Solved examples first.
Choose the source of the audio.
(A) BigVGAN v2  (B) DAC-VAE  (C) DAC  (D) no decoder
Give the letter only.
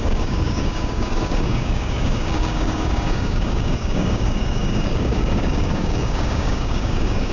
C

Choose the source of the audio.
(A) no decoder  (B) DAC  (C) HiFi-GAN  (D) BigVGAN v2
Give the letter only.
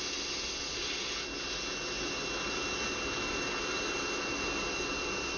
A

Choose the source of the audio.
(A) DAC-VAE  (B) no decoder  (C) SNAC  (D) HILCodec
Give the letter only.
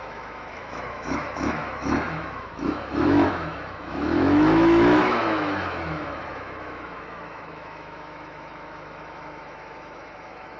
A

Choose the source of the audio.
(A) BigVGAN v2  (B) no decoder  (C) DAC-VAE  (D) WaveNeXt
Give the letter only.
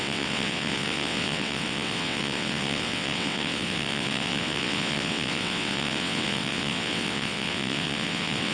D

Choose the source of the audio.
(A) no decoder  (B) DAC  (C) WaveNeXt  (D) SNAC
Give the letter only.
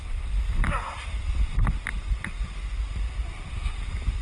A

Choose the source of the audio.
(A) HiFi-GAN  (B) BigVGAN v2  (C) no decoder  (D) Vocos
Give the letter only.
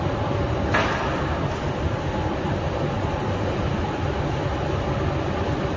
C